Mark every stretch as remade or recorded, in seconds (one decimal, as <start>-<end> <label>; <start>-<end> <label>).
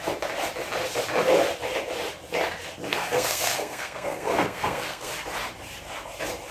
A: 0.0-2.9 recorded; 2.9-5.1 remade; 5.1-6.5 recorded